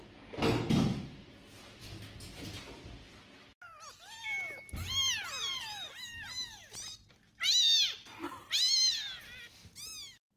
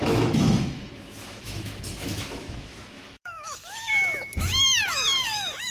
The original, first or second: first